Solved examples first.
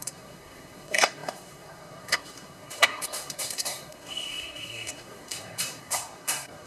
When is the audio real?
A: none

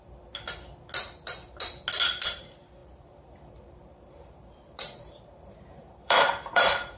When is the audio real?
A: 0.0-2.8

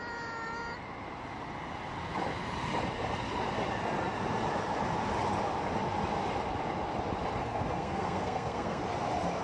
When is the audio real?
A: 0.0-7.4; 8.8-9.4

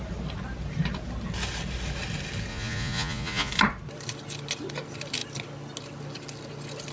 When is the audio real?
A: 0.0-2.5; 3.5-6.9

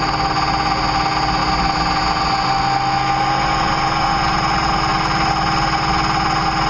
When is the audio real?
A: 0.0-6.7